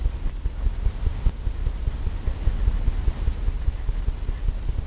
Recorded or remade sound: recorded